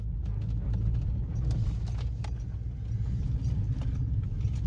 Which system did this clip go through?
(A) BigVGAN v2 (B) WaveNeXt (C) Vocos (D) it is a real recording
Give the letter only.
D